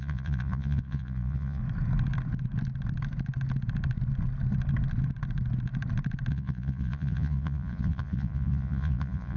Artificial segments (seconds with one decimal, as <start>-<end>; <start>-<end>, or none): 0.0-1.6; 6.3-9.4